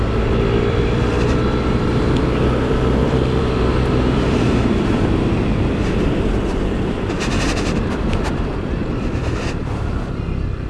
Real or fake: fake